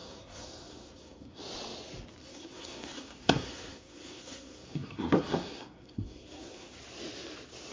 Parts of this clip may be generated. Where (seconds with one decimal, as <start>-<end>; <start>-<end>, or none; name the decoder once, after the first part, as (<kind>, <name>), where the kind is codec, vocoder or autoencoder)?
0.0-1.4 (codec, SNAC); 2.2-6.8